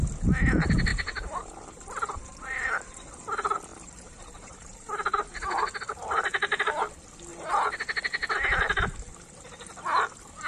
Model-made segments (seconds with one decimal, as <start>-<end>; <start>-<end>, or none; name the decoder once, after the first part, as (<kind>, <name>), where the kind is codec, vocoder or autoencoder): 0.9-3.1 (vocoder, BigVGAN v2); 3.7-5.8